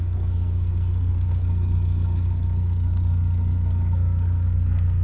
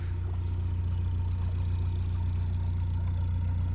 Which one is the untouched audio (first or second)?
second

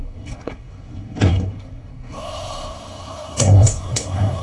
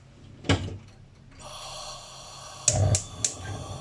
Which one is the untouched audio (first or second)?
second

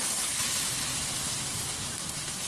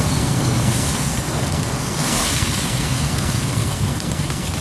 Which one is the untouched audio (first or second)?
first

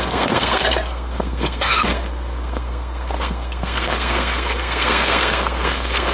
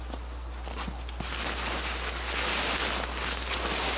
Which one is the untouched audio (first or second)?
second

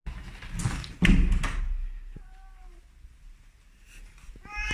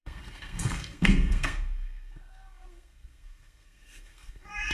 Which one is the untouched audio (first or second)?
first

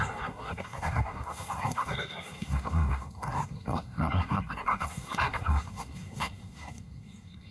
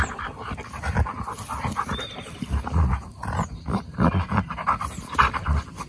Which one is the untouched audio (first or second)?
second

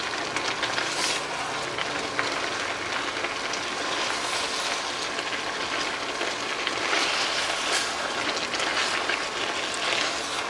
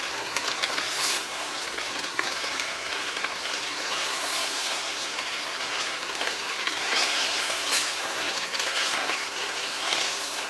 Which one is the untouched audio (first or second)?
first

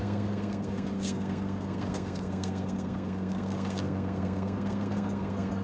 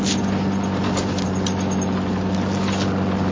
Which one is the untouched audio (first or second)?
second